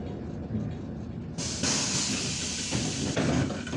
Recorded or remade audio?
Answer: recorded